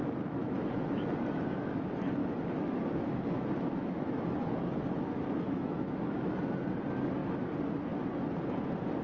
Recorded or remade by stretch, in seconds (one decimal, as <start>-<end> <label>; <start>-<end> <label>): 0.0-1.7 remade; 1.7-2.2 recorded; 2.2-6.4 remade; 6.4-9.0 recorded